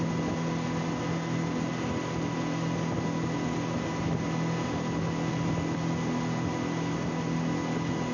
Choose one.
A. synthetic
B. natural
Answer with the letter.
B